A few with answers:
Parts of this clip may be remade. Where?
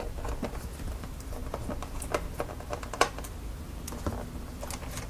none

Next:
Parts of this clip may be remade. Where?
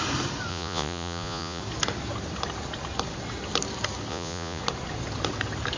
0.5-1.6 (vocoder, Vocos); 4.1-4.6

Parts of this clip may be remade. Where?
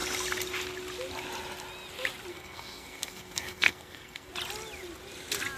2.3-4.3 (codec, SNAC)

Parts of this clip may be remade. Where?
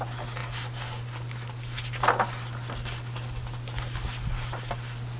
none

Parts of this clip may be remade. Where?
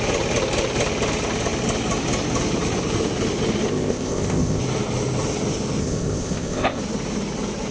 3.7-4.6 (codec, ZipCodec); 5.8-6.8